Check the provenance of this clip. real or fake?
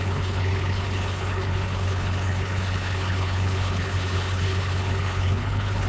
fake